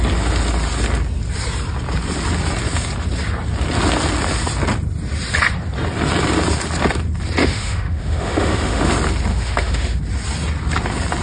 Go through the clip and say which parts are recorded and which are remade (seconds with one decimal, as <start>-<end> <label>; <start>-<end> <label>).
0.0-7.4 recorded; 7.4-8.9 remade; 8.9-9.3 recorded; 9.3-10.0 remade; 10.0-11.2 recorded